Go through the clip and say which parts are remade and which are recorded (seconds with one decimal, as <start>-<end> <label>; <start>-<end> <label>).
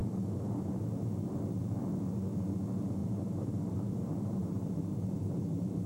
0.0-0.8 remade; 0.8-3.0 recorded; 3.0-5.9 remade